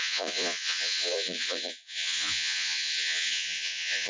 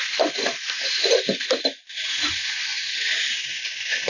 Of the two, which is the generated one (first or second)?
first